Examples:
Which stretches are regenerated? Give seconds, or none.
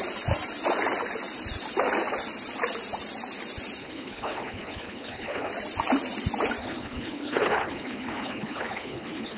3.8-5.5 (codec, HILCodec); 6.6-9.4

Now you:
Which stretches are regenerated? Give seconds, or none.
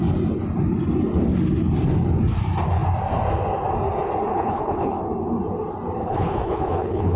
4.3-5.0 (codec, HILCodec); 6.0-7.2